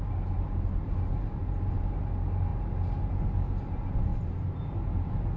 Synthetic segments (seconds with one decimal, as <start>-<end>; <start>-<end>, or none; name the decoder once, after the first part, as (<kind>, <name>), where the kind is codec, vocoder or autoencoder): none